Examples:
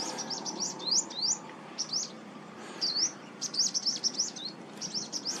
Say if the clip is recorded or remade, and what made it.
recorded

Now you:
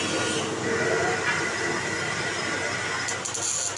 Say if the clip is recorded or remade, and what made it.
recorded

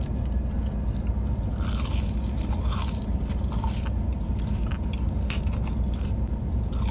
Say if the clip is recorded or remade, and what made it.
recorded